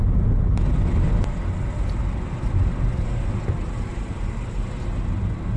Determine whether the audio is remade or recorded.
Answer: recorded